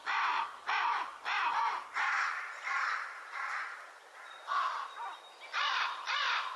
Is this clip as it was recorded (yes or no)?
yes